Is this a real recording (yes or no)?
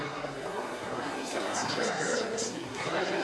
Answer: no